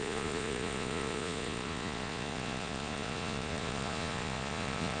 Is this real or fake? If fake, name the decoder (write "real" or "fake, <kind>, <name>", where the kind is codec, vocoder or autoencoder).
fake, vocoder, Vocos